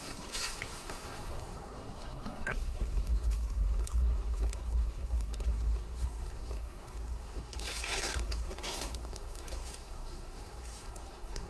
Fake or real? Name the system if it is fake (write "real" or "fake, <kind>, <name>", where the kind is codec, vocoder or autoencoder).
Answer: fake, codec, SNAC